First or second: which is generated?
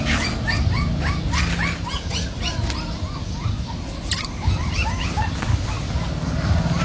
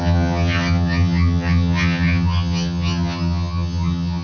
second